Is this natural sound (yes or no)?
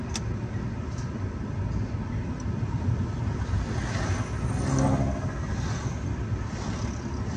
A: yes